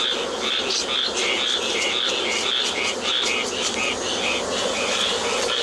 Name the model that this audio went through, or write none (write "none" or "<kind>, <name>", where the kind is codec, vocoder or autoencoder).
none